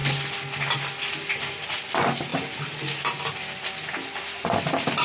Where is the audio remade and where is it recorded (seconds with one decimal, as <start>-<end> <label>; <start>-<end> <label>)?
0.0-5.0 recorded